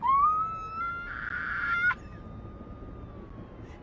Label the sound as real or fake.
real